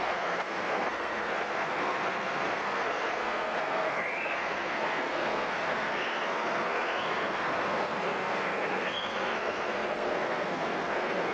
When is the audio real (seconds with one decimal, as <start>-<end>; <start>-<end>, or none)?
none